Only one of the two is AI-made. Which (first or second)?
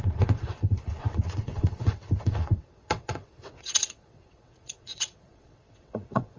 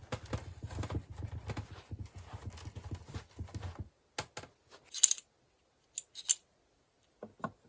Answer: first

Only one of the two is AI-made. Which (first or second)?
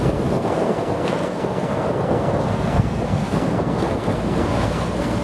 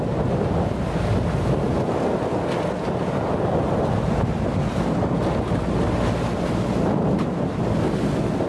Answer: first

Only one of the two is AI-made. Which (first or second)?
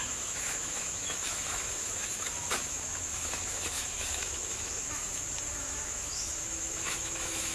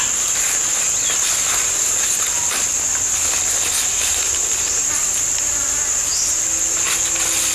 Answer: first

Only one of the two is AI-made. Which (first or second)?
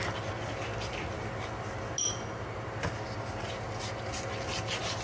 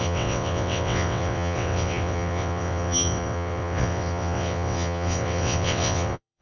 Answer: second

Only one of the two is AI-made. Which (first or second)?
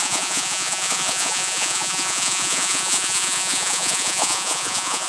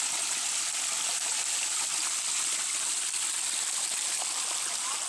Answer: first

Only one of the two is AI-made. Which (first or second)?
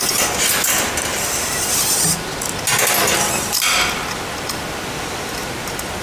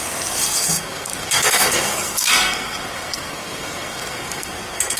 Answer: second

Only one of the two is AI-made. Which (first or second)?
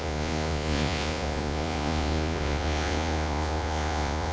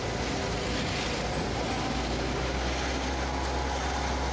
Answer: first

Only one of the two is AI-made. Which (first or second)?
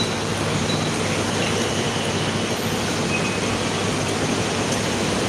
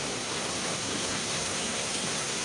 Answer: second